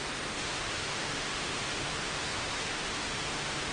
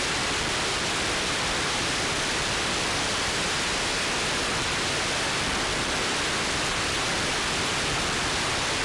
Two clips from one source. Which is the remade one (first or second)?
first